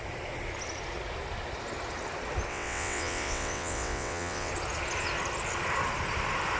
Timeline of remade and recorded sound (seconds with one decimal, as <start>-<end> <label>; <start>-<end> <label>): 0.0-2.5 recorded; 2.5-4.5 remade; 4.5-6.6 recorded